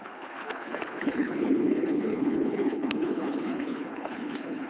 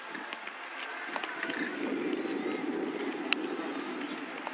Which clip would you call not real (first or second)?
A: first